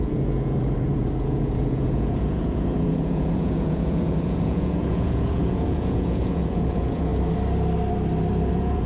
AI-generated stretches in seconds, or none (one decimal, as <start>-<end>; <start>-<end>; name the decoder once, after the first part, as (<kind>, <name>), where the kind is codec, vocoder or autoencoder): 0.0-7.1 (vocoder, Vocos); 8.5-8.9